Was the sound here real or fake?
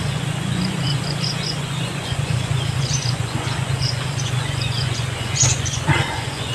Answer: fake